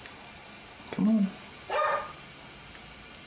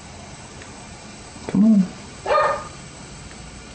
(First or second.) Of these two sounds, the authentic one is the first